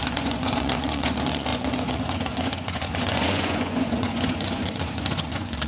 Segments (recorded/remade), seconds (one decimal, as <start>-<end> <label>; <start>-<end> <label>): 0.0-5.7 remade